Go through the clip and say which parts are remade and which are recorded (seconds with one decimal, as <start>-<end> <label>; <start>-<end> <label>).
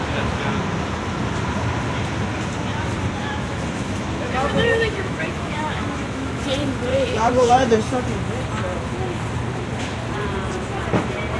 0.0-3.2 recorded; 3.2-6.4 remade; 6.4-6.9 recorded; 6.9-7.5 remade; 7.5-11.4 recorded